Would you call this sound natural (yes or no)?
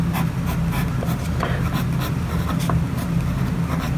yes